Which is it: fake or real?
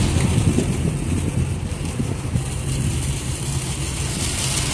real